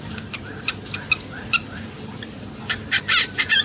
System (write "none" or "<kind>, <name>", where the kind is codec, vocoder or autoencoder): none